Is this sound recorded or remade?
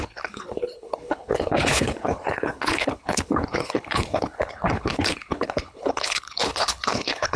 remade